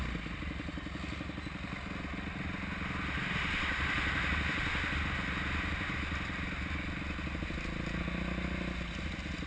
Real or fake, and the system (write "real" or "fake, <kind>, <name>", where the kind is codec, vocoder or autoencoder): real